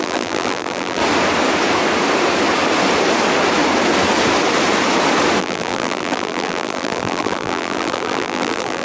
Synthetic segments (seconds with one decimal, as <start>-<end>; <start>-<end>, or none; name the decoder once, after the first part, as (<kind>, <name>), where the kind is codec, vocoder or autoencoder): 0.0-1.0 (vocoder, BigVGAN v2); 5.4-8.8